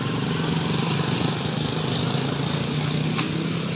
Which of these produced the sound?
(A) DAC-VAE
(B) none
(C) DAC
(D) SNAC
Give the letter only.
B